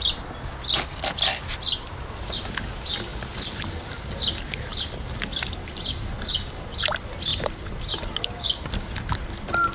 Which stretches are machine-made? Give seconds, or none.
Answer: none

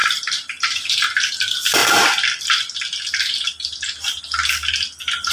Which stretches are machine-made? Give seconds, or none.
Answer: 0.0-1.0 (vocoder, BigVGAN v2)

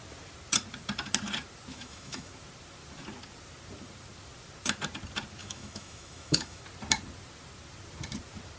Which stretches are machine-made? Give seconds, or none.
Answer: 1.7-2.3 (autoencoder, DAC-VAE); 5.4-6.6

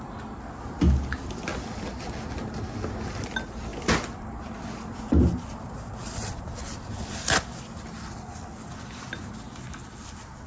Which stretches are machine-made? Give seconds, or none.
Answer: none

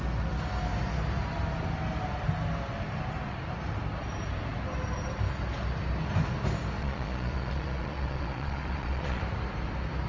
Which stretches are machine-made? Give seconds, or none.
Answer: 6.8-9.2 (vocoder, Vocos)

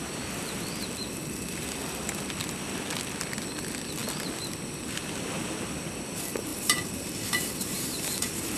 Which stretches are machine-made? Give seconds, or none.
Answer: 6.5-8.6 (vocoder, BigVGAN v2)